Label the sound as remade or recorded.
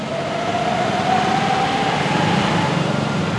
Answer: recorded